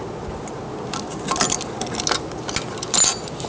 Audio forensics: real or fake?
real